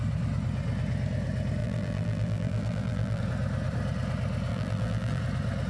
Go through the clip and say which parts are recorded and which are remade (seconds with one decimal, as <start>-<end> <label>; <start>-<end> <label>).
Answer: 0.0-1.6 recorded; 1.6-3.2 remade; 3.2-4.5 recorded; 4.5-5.2 remade; 5.2-5.7 recorded